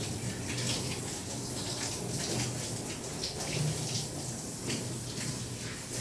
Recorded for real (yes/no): yes